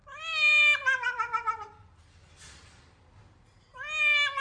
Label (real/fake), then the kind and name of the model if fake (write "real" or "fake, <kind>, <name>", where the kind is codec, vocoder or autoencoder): real